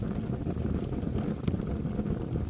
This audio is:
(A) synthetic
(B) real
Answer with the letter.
A